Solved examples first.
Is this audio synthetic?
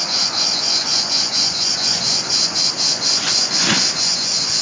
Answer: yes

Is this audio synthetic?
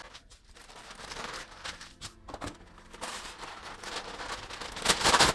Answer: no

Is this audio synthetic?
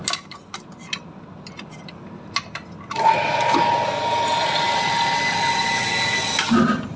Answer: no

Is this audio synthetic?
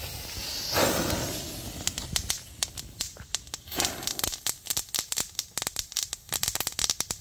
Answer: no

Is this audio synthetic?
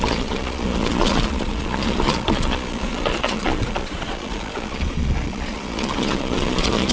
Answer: yes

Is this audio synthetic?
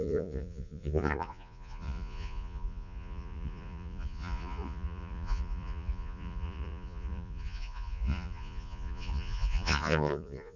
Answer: yes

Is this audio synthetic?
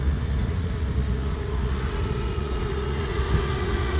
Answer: yes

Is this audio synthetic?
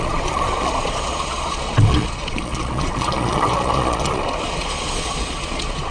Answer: yes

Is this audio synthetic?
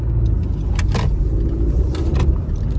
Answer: no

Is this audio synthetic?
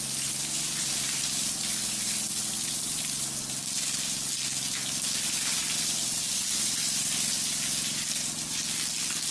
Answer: no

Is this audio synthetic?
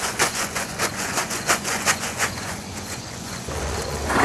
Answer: yes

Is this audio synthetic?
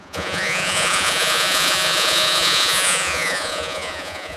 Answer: yes